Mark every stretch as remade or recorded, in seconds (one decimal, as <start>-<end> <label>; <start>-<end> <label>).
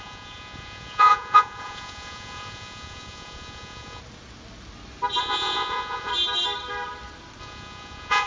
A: 0.0-4.0 remade; 4.0-5.2 recorded; 5.2-6.1 remade; 6.1-7.4 recorded; 7.4-8.3 remade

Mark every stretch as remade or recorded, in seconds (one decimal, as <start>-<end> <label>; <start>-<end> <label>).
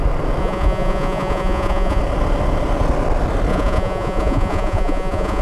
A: 0.0-0.4 recorded; 0.4-2.0 remade; 2.0-3.5 recorded; 3.5-5.4 remade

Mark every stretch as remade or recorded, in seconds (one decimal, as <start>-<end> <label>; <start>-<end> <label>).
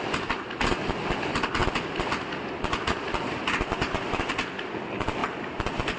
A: 0.0-6.0 recorded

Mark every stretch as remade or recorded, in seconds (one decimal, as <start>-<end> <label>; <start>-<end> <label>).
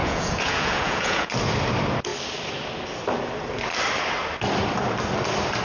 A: 0.0-1.3 remade; 1.3-5.6 recorded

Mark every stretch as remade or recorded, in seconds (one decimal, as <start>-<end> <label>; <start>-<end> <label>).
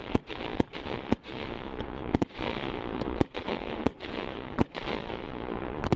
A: 0.0-6.0 remade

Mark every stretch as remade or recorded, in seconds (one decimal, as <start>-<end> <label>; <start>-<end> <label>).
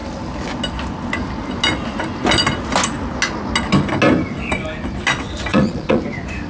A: 0.0-5.5 recorded; 5.5-6.0 remade; 6.0-6.5 recorded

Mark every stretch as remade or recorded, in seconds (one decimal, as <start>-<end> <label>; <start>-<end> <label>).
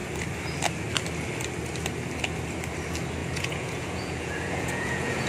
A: 0.0-3.2 recorded; 3.2-5.3 remade